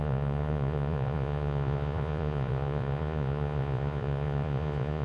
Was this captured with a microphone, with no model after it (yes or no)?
no